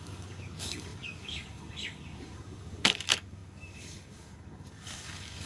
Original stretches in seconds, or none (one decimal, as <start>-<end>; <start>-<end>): none